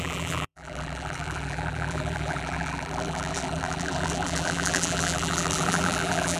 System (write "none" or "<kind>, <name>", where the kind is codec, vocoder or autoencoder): vocoder, BigVGAN v2